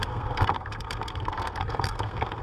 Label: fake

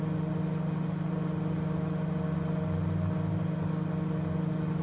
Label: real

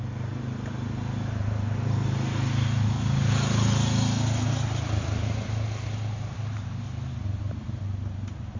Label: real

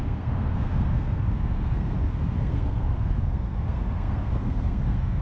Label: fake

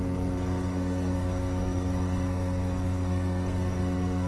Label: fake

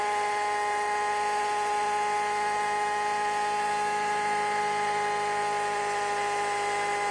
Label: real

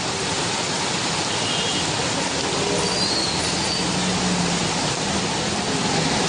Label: real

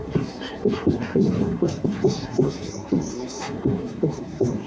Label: fake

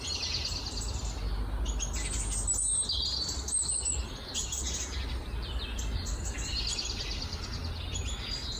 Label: real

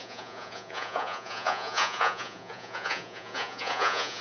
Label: fake